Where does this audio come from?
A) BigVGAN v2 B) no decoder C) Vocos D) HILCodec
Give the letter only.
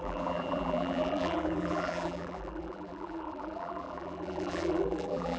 A